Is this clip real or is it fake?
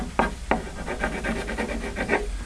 real